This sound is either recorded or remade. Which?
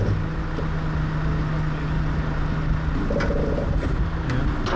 recorded